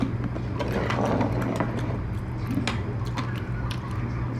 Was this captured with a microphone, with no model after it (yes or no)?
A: yes